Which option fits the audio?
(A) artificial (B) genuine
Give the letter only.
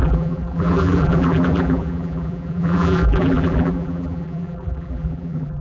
A